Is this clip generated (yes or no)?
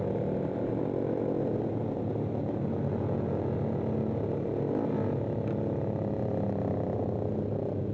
no